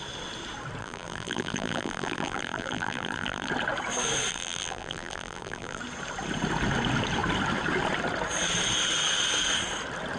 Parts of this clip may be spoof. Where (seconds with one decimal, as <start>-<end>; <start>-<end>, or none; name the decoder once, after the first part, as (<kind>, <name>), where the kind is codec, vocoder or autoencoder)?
0.8-3.5 (vocoder, BigVGAN v2); 4.3-5.8